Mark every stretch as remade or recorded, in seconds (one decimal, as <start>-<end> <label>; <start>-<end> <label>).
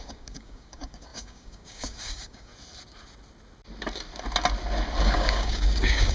0.0-2.5 remade; 2.5-5.0 recorded; 5.0-6.1 remade